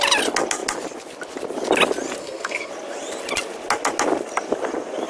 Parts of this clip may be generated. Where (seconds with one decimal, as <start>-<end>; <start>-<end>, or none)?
2.2-2.7